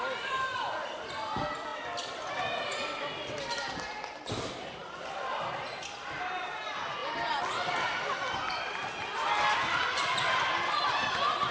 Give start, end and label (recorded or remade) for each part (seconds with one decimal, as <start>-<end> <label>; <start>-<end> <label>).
0.0-11.5 recorded